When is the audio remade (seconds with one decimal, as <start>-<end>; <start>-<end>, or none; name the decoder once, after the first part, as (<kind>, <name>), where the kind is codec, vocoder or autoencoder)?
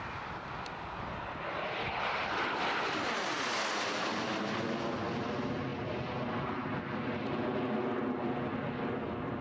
none